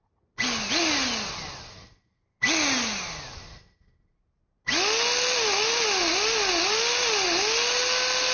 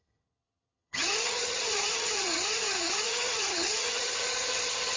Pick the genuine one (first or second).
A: first